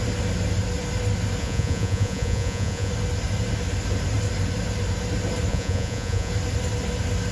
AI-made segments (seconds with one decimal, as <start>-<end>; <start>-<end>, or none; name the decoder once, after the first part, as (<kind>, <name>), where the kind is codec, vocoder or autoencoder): 1.4-2.9 (vocoder, Vocos); 5.5-6.3